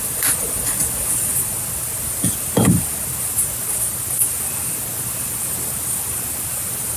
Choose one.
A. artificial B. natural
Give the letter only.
B